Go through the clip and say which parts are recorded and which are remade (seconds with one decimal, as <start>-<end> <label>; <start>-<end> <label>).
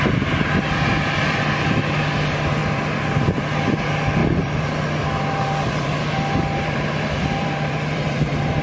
0.0-2.6 recorded; 2.6-3.4 remade; 3.4-4.2 recorded; 4.2-8.6 remade